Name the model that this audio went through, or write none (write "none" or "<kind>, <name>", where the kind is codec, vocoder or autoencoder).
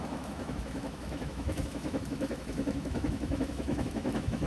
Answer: autoencoder, DAC-VAE